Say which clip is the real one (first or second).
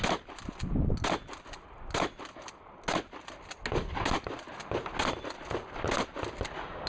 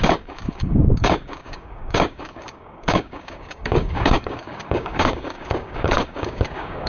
first